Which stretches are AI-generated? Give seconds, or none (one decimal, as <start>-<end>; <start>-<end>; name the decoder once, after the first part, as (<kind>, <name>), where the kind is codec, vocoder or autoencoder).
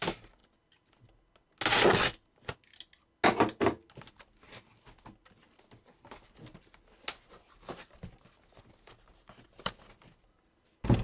none